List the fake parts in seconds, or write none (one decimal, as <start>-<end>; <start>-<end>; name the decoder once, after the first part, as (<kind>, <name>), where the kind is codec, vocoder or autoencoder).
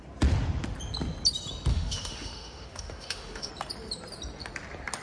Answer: 1.7-3.5 (autoencoder, DAC-VAE)